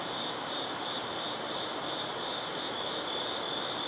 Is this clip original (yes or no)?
no